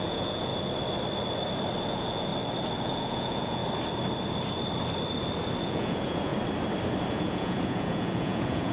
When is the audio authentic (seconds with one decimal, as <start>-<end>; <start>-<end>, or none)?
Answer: 0.5-1.8; 2.3-2.8; 3.6-5.6; 6.3-7.1